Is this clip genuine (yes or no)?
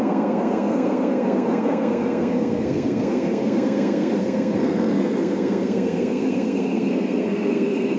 no